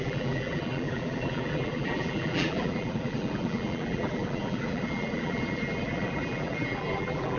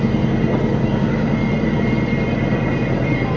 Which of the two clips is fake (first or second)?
first